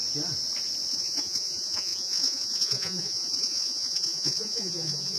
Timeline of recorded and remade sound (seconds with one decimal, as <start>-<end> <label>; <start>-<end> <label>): 0.0-0.9 recorded; 0.9-5.2 remade